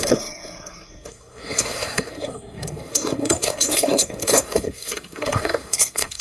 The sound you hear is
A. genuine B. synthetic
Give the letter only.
B